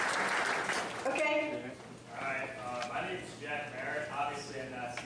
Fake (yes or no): no